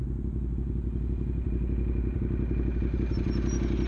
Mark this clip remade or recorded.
recorded